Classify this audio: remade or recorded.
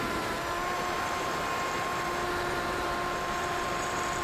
remade